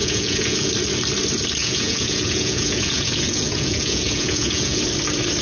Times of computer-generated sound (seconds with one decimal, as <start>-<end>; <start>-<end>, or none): 0.0-0.7; 1.6-4.8